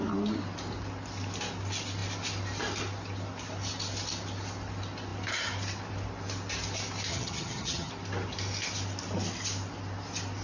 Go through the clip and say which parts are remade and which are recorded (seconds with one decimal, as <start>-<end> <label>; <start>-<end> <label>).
0.0-7.1 recorded; 7.1-7.9 remade; 7.9-10.4 recorded